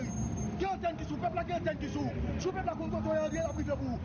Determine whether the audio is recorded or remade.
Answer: recorded